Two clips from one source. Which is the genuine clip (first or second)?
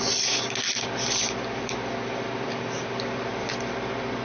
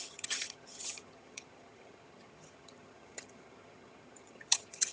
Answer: first